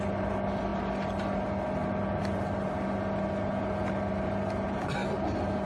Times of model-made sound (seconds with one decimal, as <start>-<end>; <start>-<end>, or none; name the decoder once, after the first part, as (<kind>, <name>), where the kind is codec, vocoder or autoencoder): none